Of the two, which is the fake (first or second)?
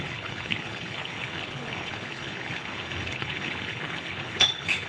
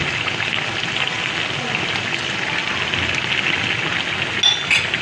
first